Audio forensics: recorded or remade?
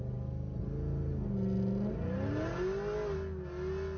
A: recorded